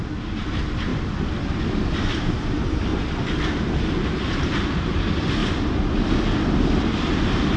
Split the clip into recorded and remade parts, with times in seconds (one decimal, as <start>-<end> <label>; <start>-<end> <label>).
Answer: 0.0-2.9 remade; 2.9-4.8 recorded; 4.8-5.4 remade; 5.4-6.1 recorded; 6.1-7.6 remade